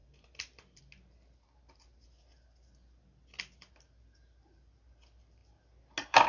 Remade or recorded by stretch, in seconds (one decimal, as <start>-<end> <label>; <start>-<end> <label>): 0.0-0.8 remade; 0.8-6.3 recorded